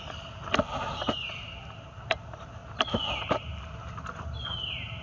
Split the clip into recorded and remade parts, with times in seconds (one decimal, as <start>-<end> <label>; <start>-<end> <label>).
0.0-5.0 recorded